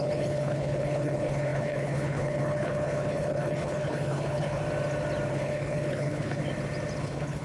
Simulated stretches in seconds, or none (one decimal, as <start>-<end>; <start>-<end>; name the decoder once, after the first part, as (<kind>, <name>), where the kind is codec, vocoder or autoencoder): 0.0-4.6 (codec, HILCodec); 5.3-6.4; 7.0-7.4